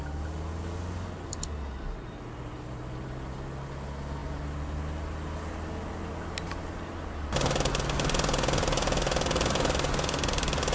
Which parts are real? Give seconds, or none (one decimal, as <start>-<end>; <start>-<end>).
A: 0.0-10.7